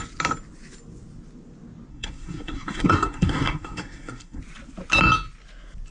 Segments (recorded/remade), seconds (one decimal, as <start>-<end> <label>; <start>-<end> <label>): 0.0-1.9 recorded; 1.9-4.4 remade; 4.4-5.9 recorded